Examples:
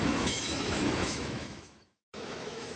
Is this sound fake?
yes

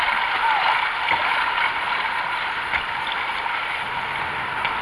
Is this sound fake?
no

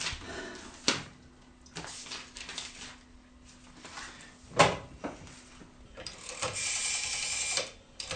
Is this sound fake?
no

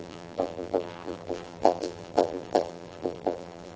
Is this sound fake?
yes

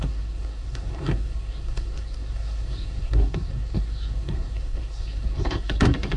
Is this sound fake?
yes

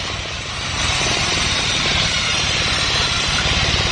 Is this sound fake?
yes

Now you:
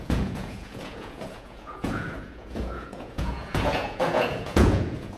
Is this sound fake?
yes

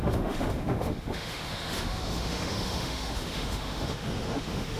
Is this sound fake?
yes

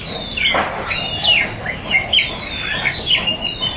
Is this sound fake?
no